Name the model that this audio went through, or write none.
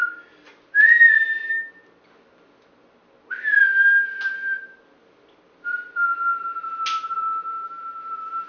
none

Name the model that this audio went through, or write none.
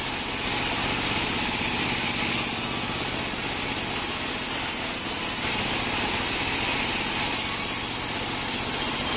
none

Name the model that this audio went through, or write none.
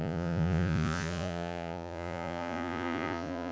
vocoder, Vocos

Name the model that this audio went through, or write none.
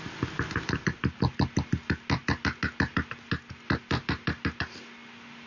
none